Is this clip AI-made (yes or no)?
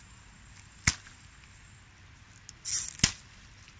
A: no